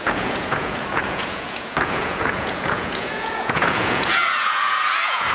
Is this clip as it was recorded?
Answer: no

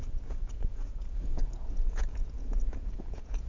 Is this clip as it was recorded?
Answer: no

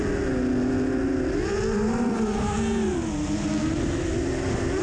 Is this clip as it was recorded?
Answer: yes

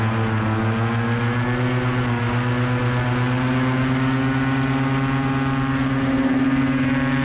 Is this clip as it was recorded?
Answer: yes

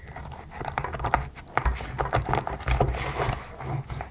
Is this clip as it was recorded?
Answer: yes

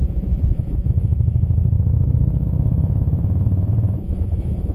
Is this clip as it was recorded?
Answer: no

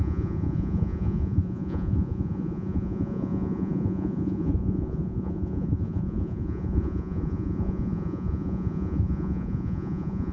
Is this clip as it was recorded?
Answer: no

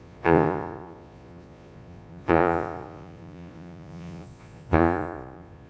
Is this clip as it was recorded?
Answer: no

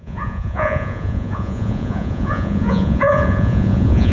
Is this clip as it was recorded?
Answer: no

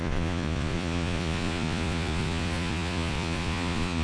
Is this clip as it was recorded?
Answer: no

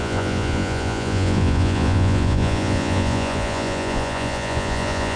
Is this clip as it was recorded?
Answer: no